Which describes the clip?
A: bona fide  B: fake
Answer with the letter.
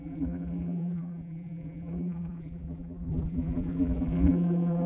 B